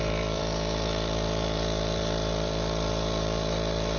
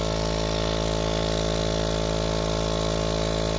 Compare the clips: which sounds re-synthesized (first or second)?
first